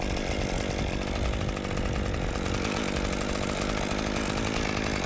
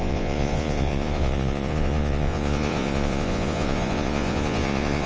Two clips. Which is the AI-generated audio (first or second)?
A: second